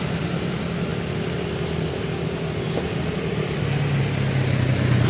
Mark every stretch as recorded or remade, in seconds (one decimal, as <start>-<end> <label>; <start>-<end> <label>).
0.0-5.1 recorded